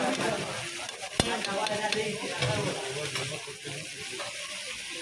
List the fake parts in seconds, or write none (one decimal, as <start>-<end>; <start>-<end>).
none